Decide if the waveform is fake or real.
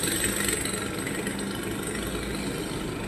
real